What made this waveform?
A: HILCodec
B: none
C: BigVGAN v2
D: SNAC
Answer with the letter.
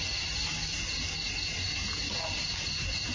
B